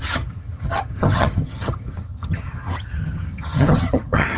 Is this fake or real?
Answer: fake